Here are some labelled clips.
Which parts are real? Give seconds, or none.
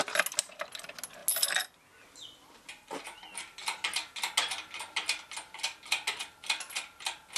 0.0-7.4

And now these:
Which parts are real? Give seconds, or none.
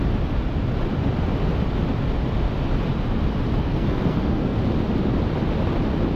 0.0-3.6; 4.6-6.2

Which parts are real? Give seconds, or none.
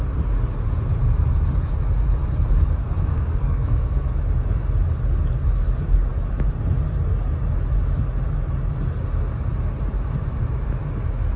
0.0-3.1; 4.0-11.4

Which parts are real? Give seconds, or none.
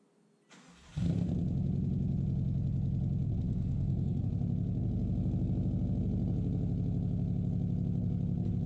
0.0-3.5; 4.2-8.7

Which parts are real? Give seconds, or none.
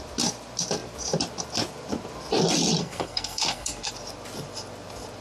0.0-2.8; 3.9-5.2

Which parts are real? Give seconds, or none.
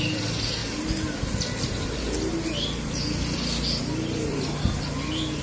0.0-5.4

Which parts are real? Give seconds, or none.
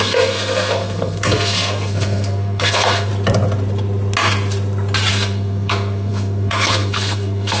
3.1-5.1